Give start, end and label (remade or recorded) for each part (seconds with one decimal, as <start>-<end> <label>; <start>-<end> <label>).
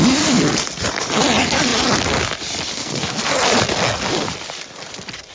0.0-2.7 recorded; 2.7-3.2 remade; 3.2-5.3 recorded